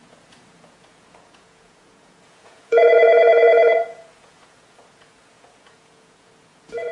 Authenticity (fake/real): fake